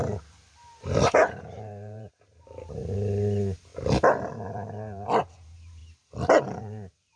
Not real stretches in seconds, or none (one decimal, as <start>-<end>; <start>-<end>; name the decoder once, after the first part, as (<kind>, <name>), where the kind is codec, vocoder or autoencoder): 0.8-3.7 (vocoder, BigVGAN v2); 4.2-5.8; 6.4-7.2